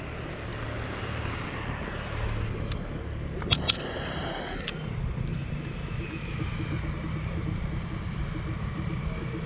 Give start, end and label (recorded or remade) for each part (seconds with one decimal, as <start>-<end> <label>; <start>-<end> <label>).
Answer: 0.0-5.3 recorded; 5.3-8.2 remade; 8.2-9.5 recorded